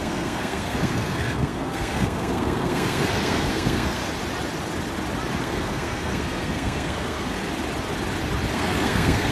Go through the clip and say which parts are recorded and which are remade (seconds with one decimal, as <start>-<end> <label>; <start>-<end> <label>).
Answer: 0.0-4.0 remade; 4.0-5.4 recorded; 5.4-7.4 remade; 7.4-8.5 recorded; 8.5-9.3 remade

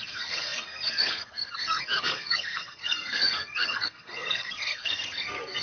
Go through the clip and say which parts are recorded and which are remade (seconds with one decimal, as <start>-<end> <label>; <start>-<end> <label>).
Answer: 0.0-5.6 remade